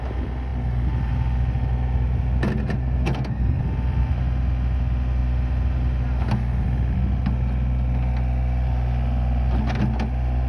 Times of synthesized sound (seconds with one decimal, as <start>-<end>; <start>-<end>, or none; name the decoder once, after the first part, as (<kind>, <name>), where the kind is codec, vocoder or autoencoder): 2.8-3.6 (codec, SNAC)